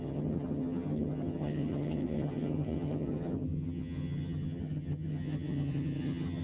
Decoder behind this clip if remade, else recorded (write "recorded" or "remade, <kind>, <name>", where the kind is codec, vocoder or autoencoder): remade, vocoder, HiFi-GAN